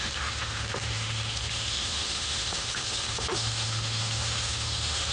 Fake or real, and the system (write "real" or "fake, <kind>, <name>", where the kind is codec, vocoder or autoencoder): fake, autoencoder, DAC-VAE